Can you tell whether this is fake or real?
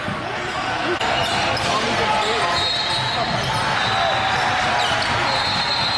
real